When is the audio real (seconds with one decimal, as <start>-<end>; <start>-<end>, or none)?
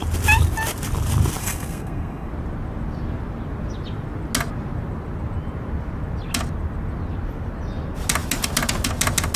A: 0.0-1.4; 2.3-9.4